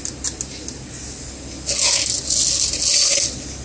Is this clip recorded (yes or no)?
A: yes